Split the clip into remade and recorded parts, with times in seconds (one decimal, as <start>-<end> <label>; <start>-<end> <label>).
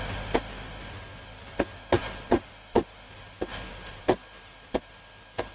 0.0-5.5 recorded